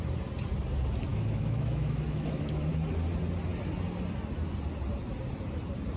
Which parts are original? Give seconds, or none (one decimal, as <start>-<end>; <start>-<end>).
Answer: 0.0-1.1; 2.7-6.0